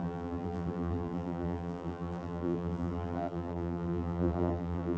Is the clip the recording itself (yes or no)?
no